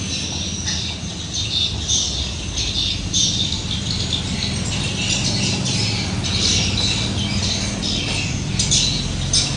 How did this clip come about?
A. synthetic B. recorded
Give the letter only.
B